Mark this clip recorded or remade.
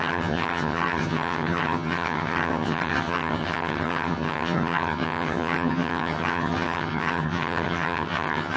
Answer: remade